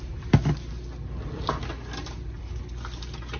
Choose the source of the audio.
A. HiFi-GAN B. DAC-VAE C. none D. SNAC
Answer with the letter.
C